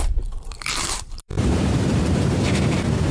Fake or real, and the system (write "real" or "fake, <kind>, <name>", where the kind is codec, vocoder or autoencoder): fake, vocoder, BigVGAN v2